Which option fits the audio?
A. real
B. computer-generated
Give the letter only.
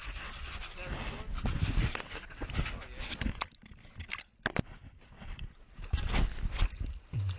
A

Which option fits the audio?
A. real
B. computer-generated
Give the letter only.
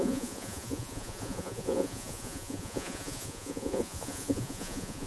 B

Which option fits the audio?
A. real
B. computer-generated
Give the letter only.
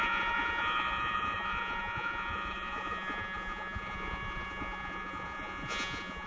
B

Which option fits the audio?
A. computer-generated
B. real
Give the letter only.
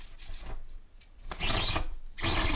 B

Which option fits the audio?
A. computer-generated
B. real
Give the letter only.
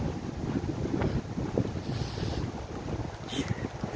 B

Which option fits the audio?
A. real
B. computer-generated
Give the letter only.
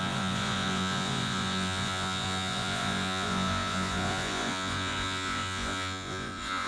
B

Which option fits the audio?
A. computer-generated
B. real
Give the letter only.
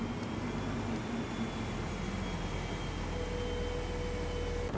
B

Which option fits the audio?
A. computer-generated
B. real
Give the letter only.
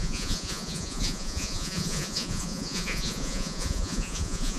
A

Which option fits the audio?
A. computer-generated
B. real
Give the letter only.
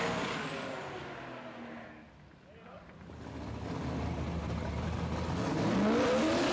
B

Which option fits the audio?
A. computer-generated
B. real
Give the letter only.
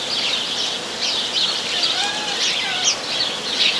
B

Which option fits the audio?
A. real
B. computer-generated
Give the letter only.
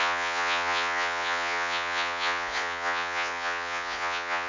B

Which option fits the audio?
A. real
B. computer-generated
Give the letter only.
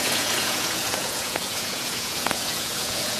B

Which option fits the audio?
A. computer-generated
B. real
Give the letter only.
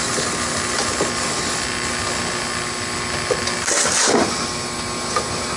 B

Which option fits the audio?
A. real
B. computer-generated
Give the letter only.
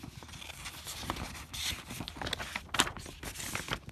A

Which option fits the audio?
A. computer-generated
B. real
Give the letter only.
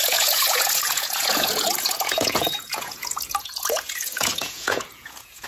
A